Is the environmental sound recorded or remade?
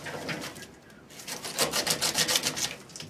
recorded